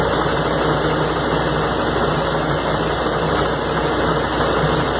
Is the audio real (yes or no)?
yes